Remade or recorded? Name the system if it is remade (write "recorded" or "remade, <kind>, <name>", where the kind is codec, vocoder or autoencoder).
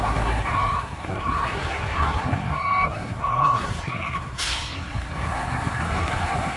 remade, codec, SNAC